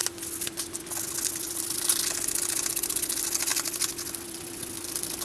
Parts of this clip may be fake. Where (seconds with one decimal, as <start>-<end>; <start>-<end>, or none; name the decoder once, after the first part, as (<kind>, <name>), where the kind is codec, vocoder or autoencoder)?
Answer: none